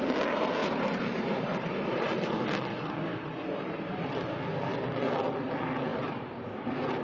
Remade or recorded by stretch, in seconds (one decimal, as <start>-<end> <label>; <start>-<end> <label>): 0.0-0.6 recorded; 0.6-2.1 remade; 2.1-3.1 recorded; 3.1-4.1 remade; 4.1-5.9 recorded; 5.9-7.0 remade